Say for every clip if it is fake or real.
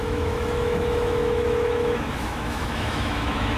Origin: fake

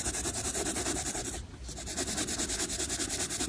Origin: real